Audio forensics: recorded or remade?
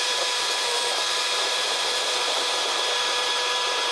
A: remade